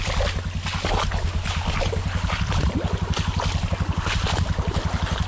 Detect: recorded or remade recorded